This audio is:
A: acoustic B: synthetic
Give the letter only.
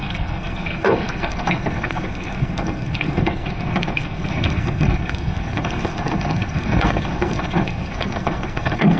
B